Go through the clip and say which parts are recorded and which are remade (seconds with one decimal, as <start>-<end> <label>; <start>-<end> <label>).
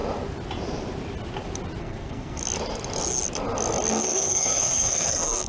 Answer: 0.0-1.8 recorded; 1.8-2.4 remade; 2.4-3.9 recorded; 3.9-5.5 remade